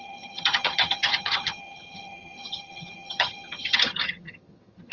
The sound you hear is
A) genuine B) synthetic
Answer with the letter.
B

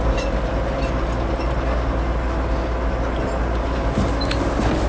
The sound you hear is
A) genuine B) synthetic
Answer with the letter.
A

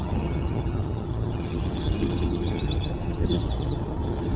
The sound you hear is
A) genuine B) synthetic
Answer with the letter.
B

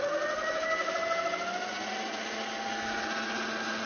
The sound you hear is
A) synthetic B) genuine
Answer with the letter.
B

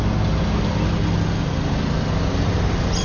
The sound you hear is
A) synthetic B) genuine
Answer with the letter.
B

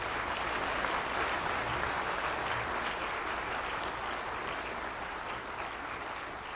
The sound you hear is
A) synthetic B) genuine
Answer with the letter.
B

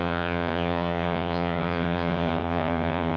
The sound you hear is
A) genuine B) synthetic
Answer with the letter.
B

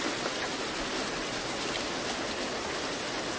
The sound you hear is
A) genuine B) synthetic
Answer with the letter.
A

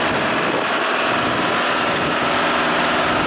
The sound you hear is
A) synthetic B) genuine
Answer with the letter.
B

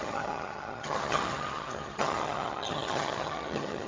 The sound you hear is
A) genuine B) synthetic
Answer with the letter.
B